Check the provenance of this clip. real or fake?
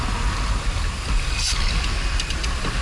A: real